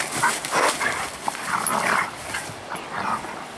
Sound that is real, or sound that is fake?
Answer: real